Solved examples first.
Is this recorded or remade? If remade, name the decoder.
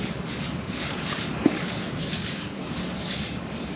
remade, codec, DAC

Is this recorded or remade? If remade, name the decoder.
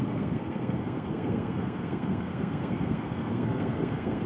remade, codec, SNAC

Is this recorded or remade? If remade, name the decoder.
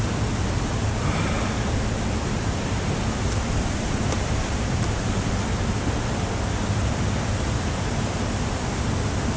recorded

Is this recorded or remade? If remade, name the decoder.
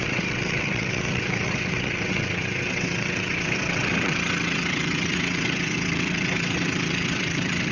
remade, vocoder, WaveNeXt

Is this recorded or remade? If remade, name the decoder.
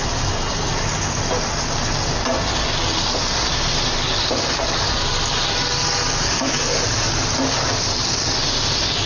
recorded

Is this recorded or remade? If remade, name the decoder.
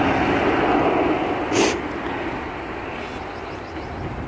recorded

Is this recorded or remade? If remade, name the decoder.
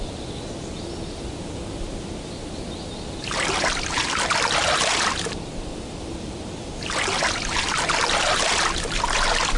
recorded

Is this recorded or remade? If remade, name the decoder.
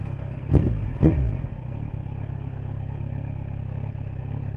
remade, codec, SNAC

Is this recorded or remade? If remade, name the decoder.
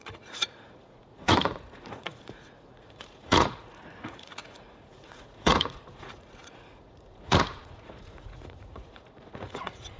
remade, vocoder, Vocos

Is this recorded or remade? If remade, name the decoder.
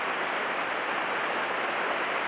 recorded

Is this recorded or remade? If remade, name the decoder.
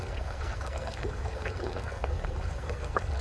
remade, codec, SNAC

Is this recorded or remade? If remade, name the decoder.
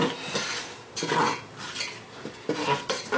recorded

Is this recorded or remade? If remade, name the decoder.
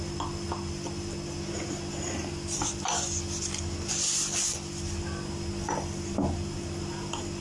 recorded